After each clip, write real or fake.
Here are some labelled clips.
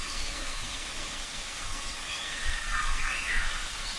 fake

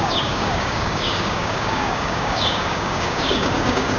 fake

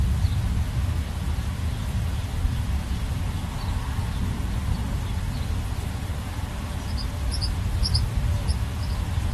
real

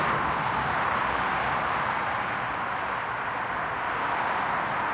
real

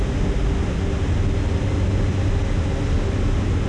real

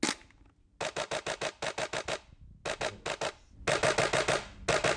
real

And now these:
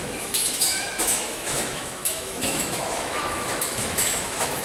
fake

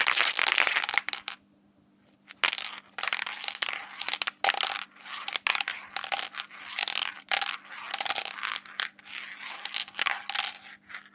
real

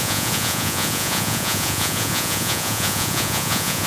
fake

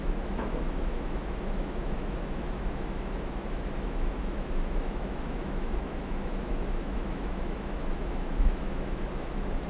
fake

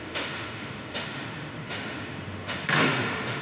fake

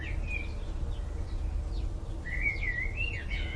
real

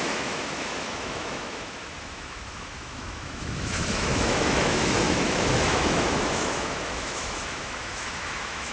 fake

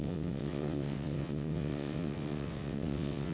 fake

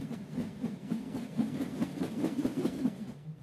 fake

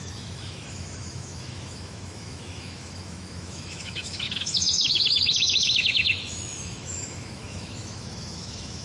fake